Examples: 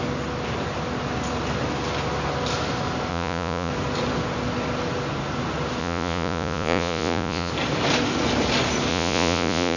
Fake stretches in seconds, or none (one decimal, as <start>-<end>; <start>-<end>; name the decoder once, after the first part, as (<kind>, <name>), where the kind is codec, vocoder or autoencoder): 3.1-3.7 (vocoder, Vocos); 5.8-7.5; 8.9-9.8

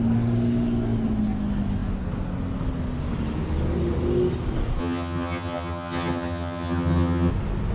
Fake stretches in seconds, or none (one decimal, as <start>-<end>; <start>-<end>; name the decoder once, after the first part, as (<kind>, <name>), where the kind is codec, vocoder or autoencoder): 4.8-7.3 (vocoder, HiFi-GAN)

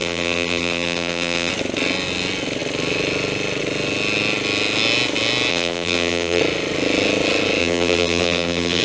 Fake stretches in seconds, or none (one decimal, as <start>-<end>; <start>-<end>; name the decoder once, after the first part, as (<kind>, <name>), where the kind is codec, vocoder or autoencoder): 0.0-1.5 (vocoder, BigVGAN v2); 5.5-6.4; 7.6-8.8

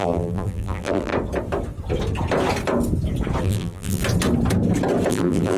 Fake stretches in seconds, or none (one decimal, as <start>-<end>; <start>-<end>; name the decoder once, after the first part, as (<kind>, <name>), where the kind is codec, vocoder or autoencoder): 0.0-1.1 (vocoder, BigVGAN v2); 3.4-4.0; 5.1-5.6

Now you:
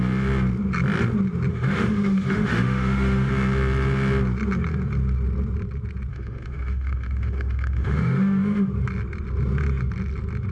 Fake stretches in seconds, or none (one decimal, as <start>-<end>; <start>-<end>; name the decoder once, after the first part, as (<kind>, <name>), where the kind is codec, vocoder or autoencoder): 1.5-3.3 (autoencoder, DAC-VAE); 6.1-8.7